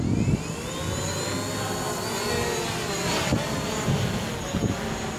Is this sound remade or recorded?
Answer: recorded